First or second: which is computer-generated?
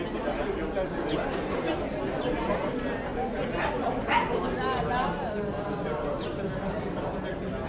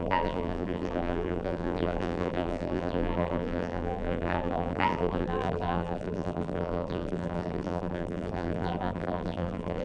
second